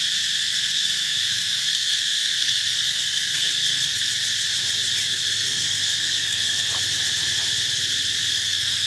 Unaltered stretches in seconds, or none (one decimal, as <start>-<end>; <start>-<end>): 0.0-0.4; 4.1-5.0; 6.7-8.2